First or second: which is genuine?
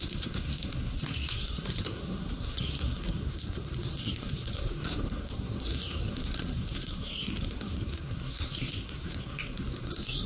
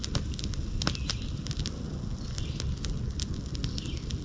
second